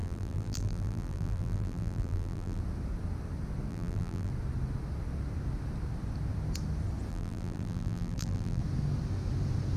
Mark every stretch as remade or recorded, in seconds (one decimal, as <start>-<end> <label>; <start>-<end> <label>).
0.0-2.6 remade; 2.6-3.7 recorded; 3.7-4.3 remade; 4.3-7.1 recorded; 7.1-8.6 remade; 8.6-9.8 recorded